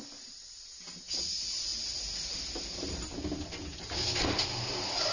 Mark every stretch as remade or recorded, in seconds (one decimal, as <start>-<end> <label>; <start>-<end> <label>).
0.0-5.1 recorded